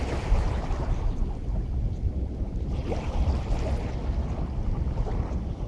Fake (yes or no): no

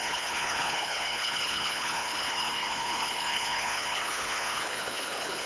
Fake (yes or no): yes